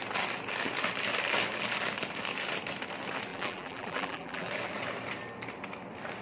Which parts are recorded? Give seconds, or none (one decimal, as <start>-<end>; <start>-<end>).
0.0-3.3; 4.5-6.2